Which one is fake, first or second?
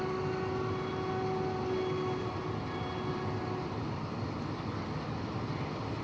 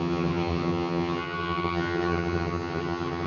second